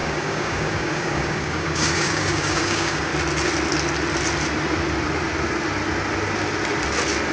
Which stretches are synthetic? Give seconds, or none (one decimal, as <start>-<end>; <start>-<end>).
0.0-3.1